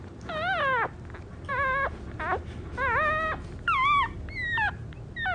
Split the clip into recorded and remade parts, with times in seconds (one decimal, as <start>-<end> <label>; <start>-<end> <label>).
0.0-5.3 recorded